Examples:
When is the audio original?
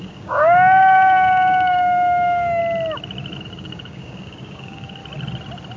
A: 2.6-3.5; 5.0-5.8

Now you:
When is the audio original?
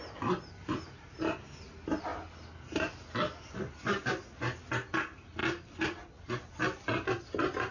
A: 0.0-7.7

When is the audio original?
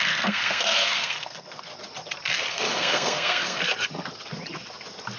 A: 1.7-2.5; 3.6-5.2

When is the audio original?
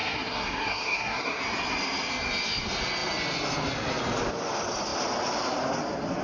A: 1.4-6.2